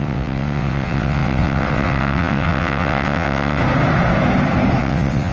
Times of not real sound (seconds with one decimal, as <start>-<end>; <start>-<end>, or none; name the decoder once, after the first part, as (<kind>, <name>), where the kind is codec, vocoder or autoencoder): 0.0-3.6 (vocoder, WaveNeXt); 4.8-5.3